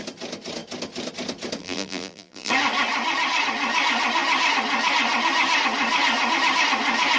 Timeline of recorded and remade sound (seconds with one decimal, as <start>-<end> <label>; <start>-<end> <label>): 0.0-1.6 recorded; 1.6-2.5 remade; 2.5-7.2 recorded